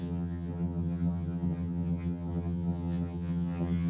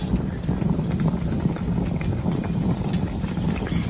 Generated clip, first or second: first